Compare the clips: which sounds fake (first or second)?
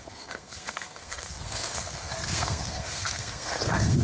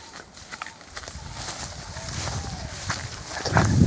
first